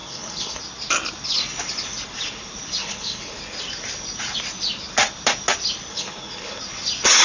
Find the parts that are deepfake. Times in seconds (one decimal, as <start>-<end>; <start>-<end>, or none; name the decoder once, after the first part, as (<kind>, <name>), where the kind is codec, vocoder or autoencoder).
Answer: 0.0-0.6 (codec, HILCodec); 2.8-3.4; 5.9-6.6